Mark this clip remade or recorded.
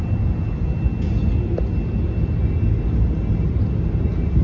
recorded